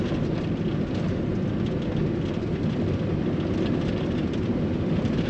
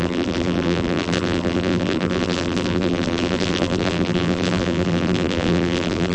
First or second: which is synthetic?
second